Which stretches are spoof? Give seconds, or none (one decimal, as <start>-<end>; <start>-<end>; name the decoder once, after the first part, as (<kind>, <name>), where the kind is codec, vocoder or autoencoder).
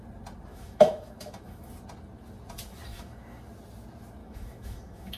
0.5-1.7 (autoencoder, DAC-VAE); 2.9-3.4; 4.2-5.2